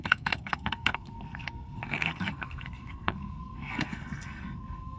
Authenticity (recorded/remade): remade